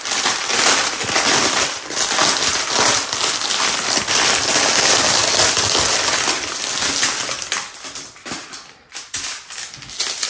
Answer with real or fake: real